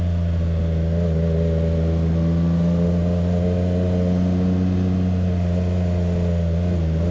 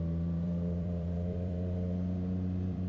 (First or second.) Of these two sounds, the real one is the first